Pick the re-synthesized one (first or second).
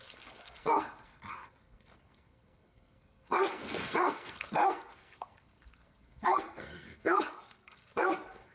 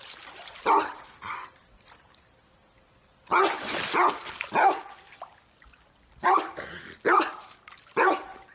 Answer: first